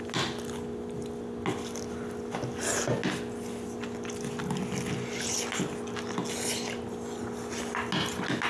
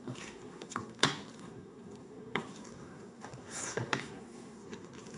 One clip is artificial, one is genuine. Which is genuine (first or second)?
first